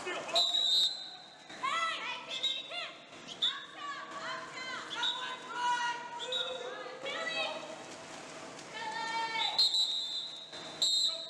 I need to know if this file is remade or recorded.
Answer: recorded